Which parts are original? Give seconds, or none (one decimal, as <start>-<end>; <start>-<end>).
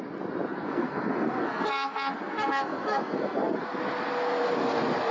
0.0-0.5; 3.6-5.1